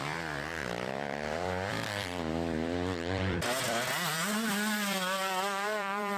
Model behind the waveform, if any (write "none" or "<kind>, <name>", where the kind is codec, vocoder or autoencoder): vocoder, BigVGAN v2